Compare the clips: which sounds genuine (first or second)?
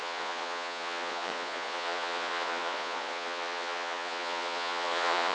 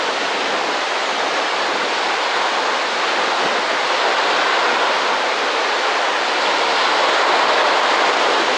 second